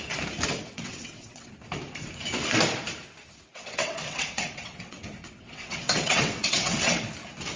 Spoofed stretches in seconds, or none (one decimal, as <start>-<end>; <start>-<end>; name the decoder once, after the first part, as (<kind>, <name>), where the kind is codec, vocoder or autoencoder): 0.5-1.5 (vocoder, WaveNeXt); 3.5-7.1